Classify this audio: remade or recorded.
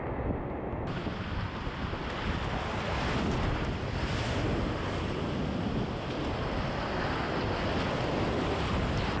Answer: recorded